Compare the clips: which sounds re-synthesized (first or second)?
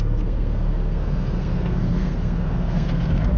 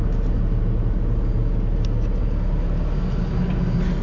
first